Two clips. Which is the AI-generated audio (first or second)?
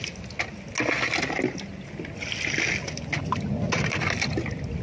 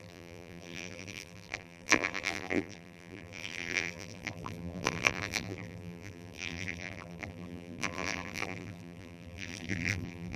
second